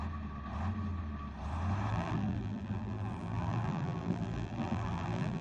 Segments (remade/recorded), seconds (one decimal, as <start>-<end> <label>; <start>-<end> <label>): 0.0-1.9 recorded; 1.9-5.4 remade